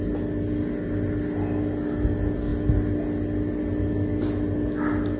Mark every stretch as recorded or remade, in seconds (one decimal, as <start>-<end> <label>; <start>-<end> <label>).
0.0-5.2 recorded